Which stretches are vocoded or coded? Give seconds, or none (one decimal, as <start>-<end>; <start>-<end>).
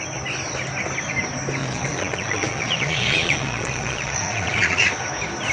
1.6-4.9